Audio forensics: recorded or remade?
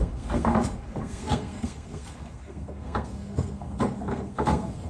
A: remade